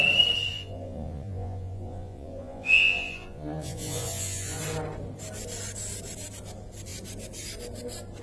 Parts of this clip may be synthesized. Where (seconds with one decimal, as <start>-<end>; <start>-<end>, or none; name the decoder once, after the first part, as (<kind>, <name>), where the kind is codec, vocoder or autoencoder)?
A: 0.5-4.6 (vocoder, Vocos)